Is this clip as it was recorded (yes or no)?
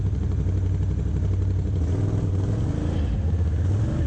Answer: yes